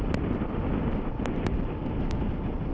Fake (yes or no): yes